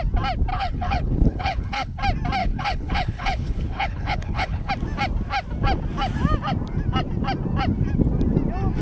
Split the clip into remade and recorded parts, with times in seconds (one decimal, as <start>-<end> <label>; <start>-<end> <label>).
0.0-0.5 recorded; 0.5-2.0 remade; 2.0-2.4 recorded; 2.4-4.7 remade; 4.7-8.8 recorded